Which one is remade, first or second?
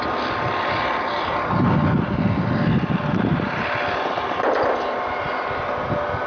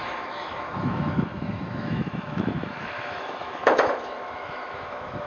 second